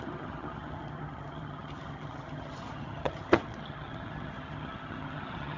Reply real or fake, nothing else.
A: fake